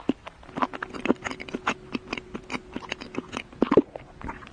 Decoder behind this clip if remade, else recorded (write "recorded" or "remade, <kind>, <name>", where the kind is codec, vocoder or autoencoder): recorded